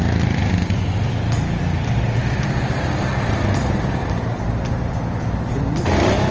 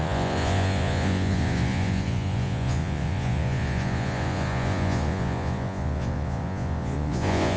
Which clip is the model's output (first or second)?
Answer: second